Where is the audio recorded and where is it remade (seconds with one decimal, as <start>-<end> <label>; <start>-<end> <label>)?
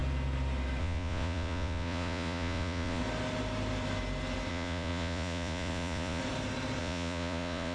0.0-0.8 recorded; 0.8-3.0 remade; 3.0-4.5 recorded; 4.5-6.2 remade; 6.2-6.8 recorded; 6.8-7.7 remade